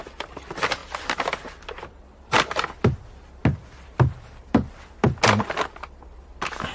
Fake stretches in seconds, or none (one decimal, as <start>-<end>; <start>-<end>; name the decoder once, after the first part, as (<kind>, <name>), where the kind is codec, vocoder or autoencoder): none